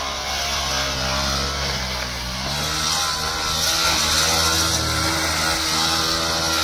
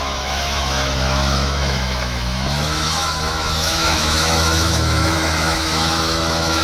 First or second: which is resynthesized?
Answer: second